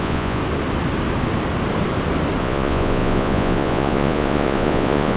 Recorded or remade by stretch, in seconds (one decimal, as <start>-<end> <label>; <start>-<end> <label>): 0.0-0.4 remade; 0.4-2.4 recorded; 2.4-5.2 remade